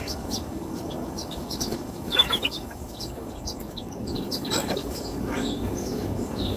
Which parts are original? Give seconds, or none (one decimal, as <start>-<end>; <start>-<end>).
none